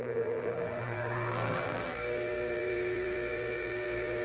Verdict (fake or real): fake